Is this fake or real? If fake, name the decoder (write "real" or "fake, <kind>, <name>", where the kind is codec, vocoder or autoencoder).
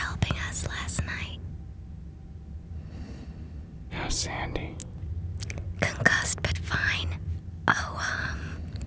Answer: real